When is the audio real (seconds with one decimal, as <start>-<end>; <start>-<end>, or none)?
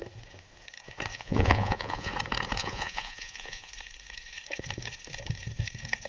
0.0-1.1; 2.1-2.6; 3.7-6.1